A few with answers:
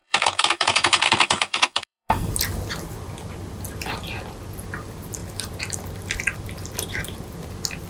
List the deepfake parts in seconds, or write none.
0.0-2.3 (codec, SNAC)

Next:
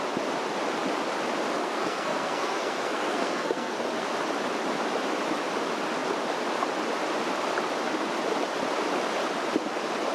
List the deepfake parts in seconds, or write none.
1.6-4.1 (codec, SNAC)

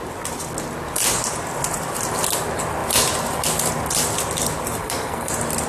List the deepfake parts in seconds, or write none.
4.8-5.3 (codec, SNAC)

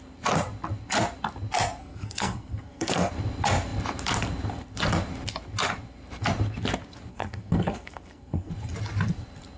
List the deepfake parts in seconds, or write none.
1.8-3.1 (codec, SNAC); 7.1-8.5

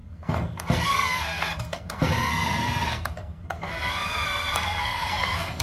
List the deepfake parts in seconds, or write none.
0.0-5.6 (codec, SNAC)

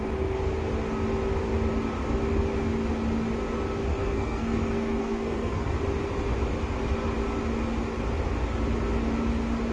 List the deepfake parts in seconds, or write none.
3.9-5.7 (codec, SNAC)